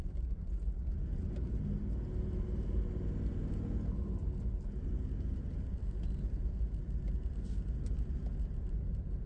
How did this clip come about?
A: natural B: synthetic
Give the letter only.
A